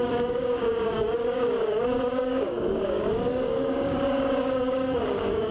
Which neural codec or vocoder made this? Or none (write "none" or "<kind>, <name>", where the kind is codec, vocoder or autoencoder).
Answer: codec, DAC